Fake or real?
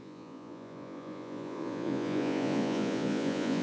fake